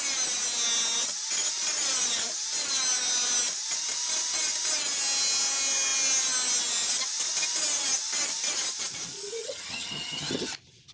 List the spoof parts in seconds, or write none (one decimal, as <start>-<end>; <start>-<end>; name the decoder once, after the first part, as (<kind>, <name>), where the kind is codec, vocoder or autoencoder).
9.4-10.5 (vocoder, HiFi-GAN)